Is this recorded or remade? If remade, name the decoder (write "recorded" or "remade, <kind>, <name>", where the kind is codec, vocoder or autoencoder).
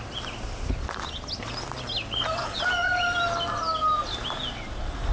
recorded